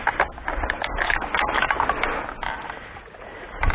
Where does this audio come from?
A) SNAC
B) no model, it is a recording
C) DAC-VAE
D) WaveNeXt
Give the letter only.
B